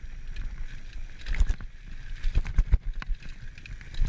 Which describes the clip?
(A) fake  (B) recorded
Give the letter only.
B